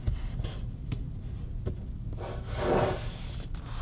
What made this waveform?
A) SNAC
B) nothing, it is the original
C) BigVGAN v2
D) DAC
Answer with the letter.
B